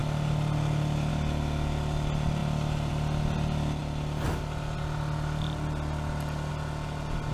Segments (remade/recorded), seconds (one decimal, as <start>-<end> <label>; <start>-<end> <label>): 0.0-7.3 recorded